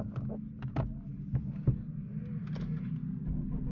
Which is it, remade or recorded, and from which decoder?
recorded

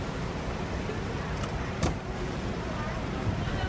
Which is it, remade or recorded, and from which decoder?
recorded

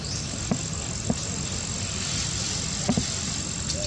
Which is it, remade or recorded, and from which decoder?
recorded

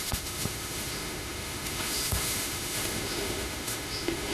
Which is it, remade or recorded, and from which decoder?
remade, autoencoder, DAC-VAE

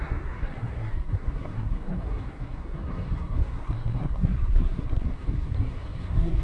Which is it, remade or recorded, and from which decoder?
remade, codec, SNAC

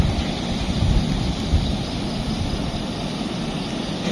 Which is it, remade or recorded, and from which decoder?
recorded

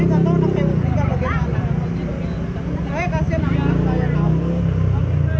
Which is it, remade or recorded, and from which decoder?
recorded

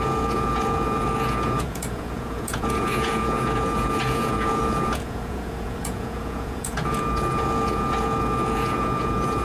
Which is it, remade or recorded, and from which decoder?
remade, vocoder, Vocos